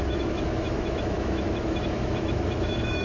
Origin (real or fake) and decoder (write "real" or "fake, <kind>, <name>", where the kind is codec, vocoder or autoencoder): fake, autoencoder, DAC-VAE